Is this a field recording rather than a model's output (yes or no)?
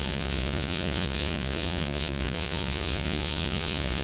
no